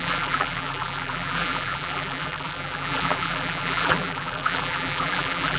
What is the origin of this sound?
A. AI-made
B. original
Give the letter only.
A